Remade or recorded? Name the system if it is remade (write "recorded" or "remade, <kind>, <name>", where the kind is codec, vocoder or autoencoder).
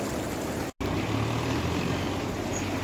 recorded